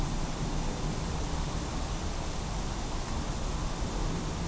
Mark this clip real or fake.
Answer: real